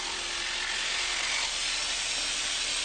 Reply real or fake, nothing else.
real